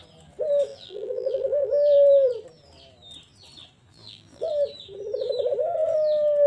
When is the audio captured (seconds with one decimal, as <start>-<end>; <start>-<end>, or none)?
0.0-0.7; 2.3-3.9; 4.5-6.5